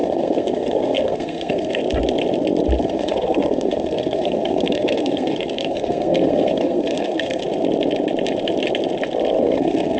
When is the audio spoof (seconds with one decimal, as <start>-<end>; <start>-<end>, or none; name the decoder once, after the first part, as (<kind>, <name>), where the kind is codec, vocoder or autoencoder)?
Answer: 0.0-1.8 (codec, SNAC); 2.8-7.4; 9.4-10.0